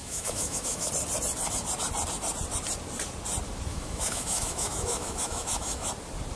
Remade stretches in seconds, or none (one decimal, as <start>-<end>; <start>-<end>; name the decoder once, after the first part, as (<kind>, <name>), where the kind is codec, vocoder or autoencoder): 0.0-0.9 (autoencoder, DAC-VAE); 3.7-5.9